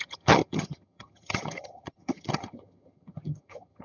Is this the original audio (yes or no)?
no